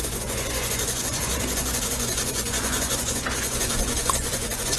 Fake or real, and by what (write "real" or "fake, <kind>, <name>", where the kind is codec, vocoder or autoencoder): fake, vocoder, Vocos